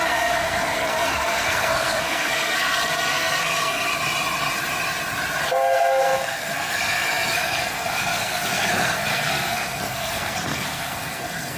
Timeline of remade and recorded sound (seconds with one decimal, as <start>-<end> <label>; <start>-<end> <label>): 0.0-3.9 remade; 3.9-5.4 recorded; 5.4-11.6 remade